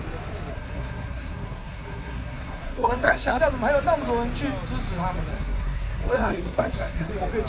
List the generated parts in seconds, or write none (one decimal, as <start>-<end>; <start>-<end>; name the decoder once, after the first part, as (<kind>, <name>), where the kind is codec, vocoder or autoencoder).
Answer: 0.5-3.4 (codec, SNAC); 5.3-7.1